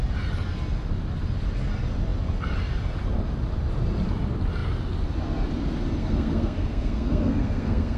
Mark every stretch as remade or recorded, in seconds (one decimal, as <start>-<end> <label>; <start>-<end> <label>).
0.0-6.0 recorded; 6.0-8.0 remade